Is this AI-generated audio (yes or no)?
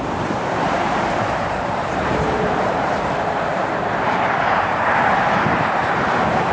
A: yes